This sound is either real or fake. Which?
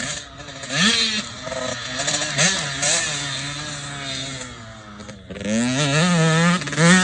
real